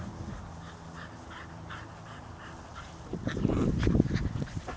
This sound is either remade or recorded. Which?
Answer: recorded